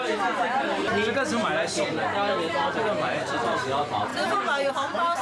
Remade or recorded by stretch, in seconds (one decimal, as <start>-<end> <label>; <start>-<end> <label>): 0.0-0.9 remade; 0.9-1.4 recorded; 1.4-2.0 remade; 2.0-2.5 recorded; 2.5-5.2 remade